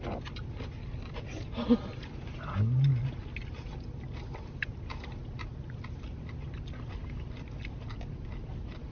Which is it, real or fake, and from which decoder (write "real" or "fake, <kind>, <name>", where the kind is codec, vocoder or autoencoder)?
real